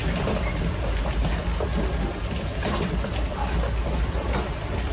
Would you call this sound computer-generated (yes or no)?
no